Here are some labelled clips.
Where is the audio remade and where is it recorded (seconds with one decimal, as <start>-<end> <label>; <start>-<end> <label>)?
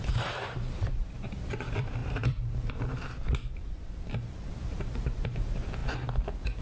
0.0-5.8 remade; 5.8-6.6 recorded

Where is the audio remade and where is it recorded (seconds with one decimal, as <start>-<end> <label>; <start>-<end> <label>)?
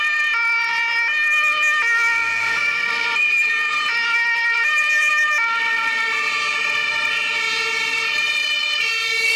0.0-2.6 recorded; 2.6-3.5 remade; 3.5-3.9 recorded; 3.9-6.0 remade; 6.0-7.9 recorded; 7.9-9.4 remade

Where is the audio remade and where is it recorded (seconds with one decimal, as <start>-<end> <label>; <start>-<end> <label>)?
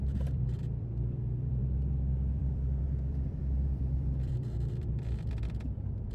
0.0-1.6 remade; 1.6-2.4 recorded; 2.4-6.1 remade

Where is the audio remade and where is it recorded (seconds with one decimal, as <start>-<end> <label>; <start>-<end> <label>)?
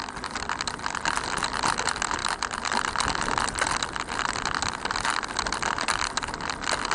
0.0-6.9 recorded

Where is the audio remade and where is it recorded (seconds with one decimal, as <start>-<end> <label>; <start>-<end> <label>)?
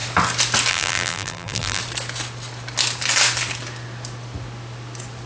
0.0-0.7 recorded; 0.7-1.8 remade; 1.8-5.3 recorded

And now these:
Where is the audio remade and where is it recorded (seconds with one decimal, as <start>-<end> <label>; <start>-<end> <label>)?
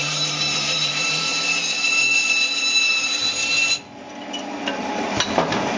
0.0-1.3 remade; 1.3-2.6 recorded; 2.6-3.2 remade; 3.2-4.8 recorded; 4.8-5.8 remade